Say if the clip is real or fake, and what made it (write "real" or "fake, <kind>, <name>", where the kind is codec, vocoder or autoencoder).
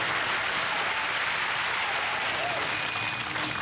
real